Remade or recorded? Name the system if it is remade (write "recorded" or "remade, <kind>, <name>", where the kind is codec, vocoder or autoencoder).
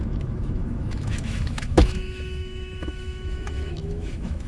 remade, autoencoder, DAC-VAE